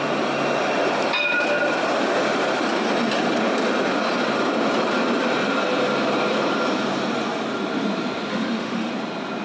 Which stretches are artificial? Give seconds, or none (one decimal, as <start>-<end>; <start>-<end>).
8.3-8.9